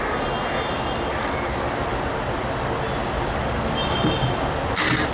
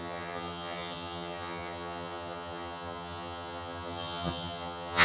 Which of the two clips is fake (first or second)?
second